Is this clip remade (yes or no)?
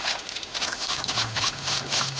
yes